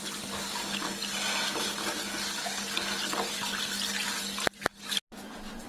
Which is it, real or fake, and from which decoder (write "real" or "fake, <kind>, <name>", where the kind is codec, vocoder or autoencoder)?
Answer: real